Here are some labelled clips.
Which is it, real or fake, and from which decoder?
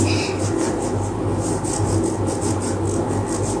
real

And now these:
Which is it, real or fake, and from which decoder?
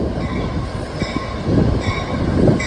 real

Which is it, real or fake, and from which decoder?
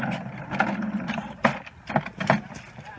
real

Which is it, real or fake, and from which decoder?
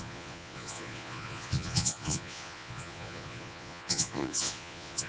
fake, vocoder, Vocos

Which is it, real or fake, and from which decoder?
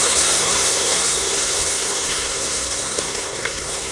fake, codec, SNAC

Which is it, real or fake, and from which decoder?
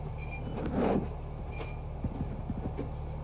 real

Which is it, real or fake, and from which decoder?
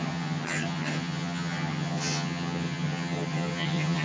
fake, vocoder, HiFi-GAN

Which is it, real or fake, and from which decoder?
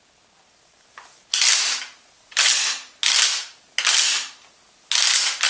real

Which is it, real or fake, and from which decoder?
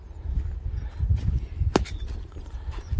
real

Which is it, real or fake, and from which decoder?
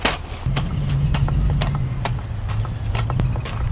real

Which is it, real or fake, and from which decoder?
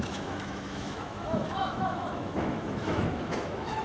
fake, autoencoder, DAC-VAE